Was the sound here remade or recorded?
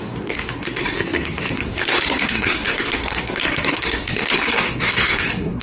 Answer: remade